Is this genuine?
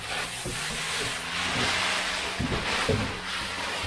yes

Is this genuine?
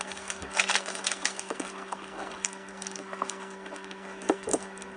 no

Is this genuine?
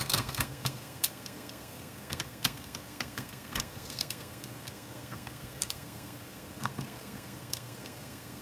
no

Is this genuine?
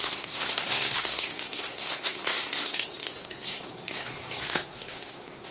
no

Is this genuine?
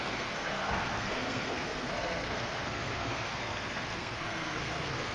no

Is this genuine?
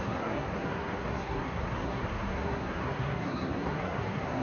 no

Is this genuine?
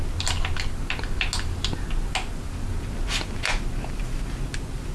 yes